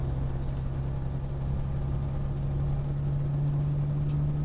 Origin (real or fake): real